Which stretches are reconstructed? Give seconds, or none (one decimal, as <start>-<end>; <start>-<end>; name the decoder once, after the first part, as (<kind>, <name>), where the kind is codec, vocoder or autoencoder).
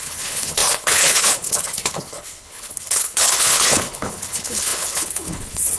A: 0.0-5.8 (codec, HILCodec)